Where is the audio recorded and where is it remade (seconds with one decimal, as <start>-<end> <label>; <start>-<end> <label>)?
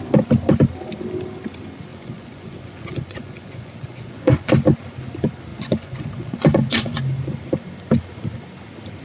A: 0.0-1.9 recorded; 1.9-4.5 remade; 4.5-5.5 recorded; 5.5-7.0 remade; 7.0-9.0 recorded